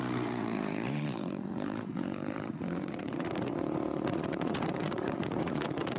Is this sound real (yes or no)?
no